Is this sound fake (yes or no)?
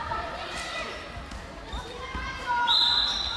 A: yes